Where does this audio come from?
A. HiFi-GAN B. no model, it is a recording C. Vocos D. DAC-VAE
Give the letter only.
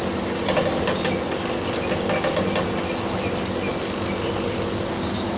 B